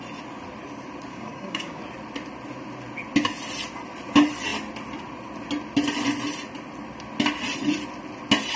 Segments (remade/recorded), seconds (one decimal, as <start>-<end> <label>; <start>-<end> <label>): 0.0-1.1 recorded; 1.1-1.8 remade; 1.8-8.6 recorded